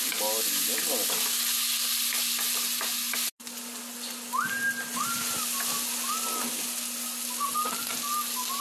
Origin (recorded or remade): recorded